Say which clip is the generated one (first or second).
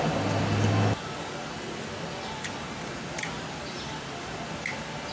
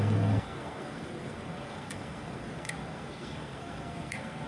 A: second